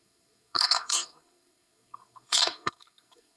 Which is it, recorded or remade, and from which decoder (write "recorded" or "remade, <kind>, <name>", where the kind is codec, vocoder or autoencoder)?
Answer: remade, codec, SNAC